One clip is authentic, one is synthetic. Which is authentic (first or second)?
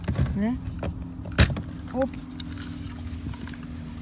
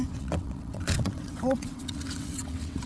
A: first